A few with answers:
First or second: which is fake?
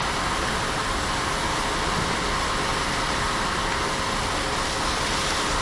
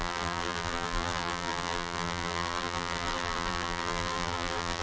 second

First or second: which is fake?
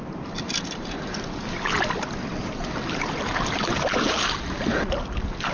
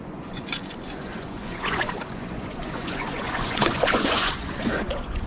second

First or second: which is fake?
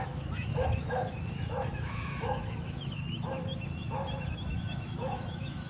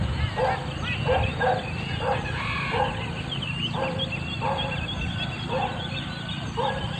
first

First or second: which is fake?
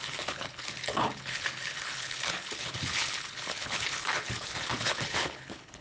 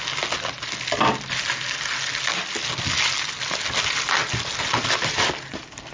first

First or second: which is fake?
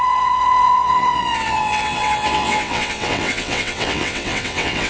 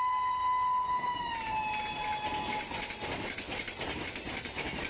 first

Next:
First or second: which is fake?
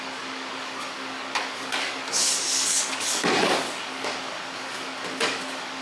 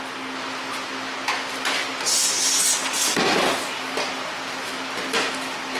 first